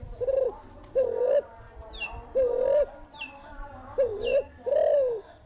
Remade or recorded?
recorded